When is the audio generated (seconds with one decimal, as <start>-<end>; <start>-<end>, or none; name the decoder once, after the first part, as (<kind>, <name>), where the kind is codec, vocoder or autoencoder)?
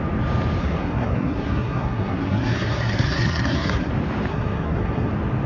0.6-3.9 (codec, SNAC); 4.3-5.1